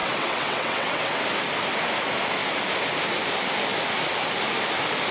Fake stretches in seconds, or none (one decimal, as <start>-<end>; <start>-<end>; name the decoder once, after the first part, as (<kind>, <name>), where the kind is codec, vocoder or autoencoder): 0.0-1.2 (vocoder, WaveNeXt)